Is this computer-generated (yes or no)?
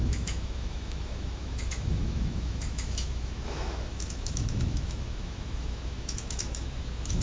yes